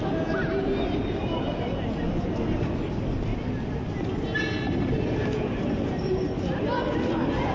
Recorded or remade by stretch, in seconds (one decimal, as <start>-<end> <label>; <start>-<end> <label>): 0.0-7.5 recorded